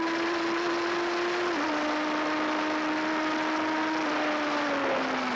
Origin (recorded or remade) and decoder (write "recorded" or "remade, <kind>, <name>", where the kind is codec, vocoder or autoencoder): recorded